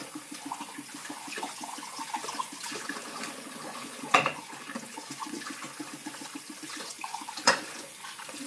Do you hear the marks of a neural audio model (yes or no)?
yes